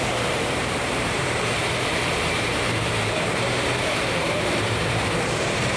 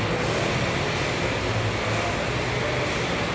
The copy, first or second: first